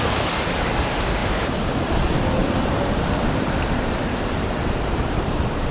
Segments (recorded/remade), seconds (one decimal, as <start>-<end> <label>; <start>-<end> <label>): 0.0-1.2 recorded; 1.2-1.9 remade; 1.9-2.4 recorded; 2.4-5.7 remade